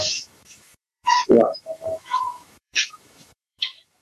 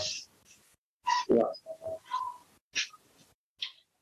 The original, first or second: second